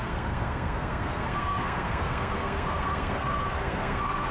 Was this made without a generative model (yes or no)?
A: no